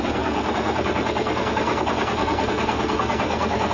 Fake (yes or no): yes